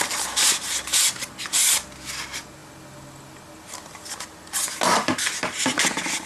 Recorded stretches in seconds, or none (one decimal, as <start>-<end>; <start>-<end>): 0.0-6.3